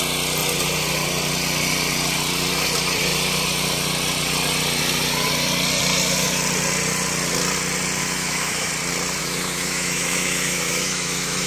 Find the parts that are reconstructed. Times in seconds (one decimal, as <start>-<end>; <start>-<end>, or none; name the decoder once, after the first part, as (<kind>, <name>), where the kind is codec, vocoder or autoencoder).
8.0-8.7 (autoencoder, DAC-VAE); 9.2-11.5